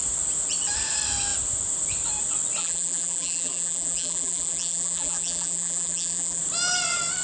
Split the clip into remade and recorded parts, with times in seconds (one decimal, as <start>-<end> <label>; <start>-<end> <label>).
0.0-2.6 recorded; 2.6-6.4 remade; 6.4-7.2 recorded